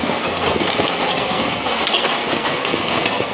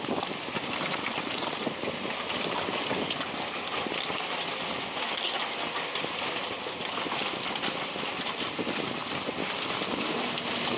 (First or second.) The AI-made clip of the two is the first